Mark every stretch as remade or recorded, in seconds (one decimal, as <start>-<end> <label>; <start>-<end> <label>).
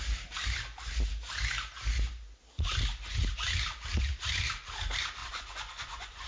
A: 0.0-5.2 recorded; 5.2-6.3 remade